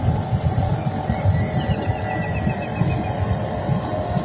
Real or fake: real